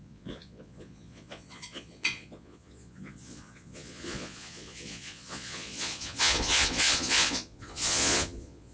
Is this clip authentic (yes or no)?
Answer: no